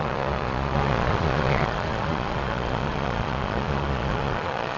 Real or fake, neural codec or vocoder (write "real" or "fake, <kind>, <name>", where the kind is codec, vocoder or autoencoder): fake, vocoder, Vocos